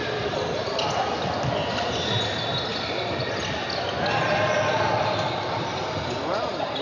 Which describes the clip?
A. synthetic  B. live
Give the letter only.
B